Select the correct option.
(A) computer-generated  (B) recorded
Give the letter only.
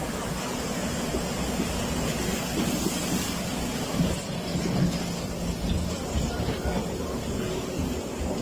B